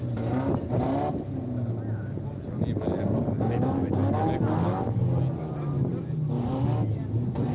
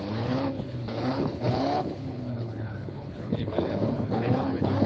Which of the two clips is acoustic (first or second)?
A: first